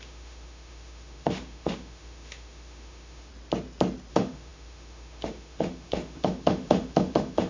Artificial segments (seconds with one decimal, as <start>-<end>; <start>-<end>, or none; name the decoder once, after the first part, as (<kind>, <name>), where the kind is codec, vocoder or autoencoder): 0.0-3.3 (autoencoder, DAC-VAE); 4.1-7.5